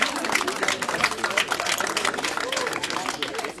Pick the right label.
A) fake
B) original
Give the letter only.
B